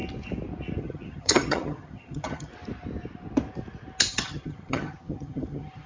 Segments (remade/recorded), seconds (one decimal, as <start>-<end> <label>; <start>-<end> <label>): 0.0-0.8 recorded; 0.8-2.5 remade; 2.5-4.1 recorded; 4.1-5.9 remade